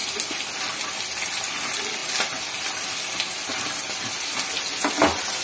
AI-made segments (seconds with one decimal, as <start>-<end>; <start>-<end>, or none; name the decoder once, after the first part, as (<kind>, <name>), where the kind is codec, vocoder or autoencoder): none